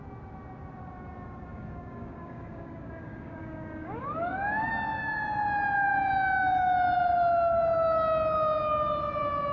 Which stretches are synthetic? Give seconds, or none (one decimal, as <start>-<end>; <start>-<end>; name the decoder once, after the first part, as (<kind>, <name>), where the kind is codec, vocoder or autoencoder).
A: 1.5-4.7 (codec, DAC)